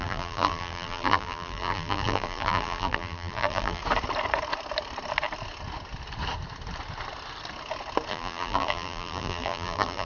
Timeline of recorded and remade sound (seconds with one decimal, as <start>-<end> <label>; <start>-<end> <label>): 0.0-3.8 remade; 3.8-8.1 recorded; 8.1-10.0 remade